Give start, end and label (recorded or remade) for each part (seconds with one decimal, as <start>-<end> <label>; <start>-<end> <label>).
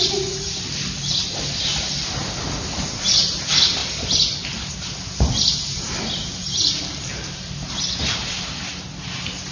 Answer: 0.0-9.5 recorded